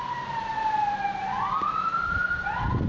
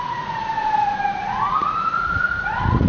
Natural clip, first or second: first